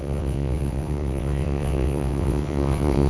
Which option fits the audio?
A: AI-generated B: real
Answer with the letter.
A